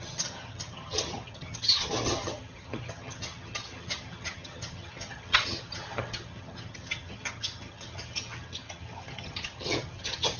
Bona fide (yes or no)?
no